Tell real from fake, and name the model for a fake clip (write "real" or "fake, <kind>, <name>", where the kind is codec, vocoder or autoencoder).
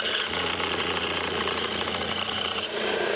fake, vocoder, Vocos